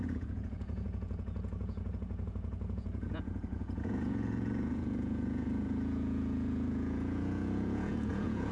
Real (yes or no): no